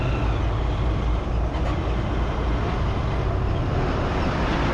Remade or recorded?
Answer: recorded